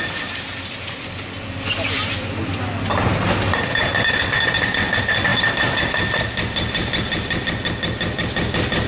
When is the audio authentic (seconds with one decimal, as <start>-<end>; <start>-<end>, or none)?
0.0-8.9